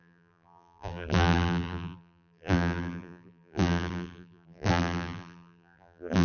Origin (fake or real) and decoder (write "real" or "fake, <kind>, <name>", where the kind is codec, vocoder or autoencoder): fake, vocoder, BigVGAN v2